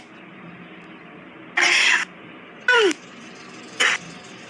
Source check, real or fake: real